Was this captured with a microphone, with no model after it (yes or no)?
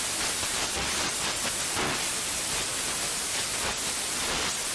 yes